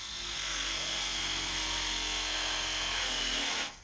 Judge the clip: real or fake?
fake